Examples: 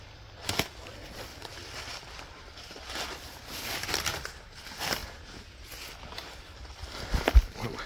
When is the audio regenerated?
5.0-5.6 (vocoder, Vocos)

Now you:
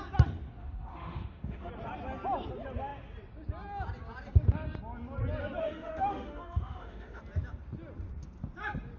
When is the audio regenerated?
0.6-1.7 (autoencoder, DAC-VAE); 5.6-7.2

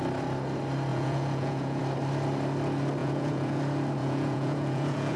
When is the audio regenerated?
0.9-1.8 (vocoder, Vocos); 3.0-3.6; 4.0-5.2

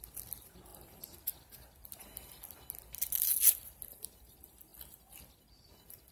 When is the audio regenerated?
none

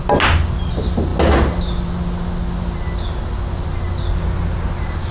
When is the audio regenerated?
none

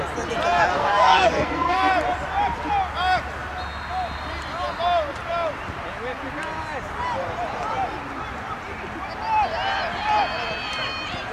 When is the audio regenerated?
0.7-1.9 (codec, SNAC)

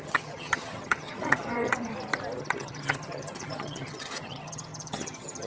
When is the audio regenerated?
0.0-1.9 (vocoder, HiFi-GAN); 2.4-5.5